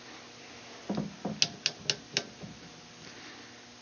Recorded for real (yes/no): yes